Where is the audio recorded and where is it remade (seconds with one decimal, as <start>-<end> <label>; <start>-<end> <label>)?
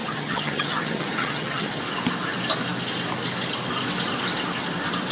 0.0-1.8 remade; 1.8-5.1 recorded